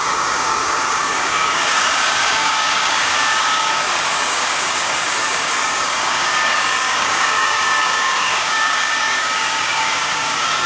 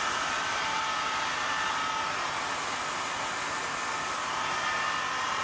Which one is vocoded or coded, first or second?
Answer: first